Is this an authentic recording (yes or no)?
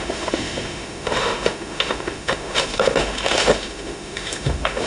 no